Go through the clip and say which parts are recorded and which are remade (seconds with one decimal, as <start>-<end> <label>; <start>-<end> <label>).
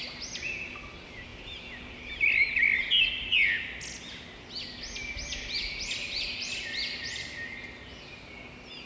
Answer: 0.0-8.9 recorded